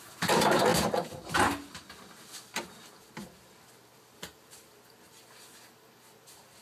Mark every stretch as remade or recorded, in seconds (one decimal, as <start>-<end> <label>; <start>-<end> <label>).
0.0-6.6 recorded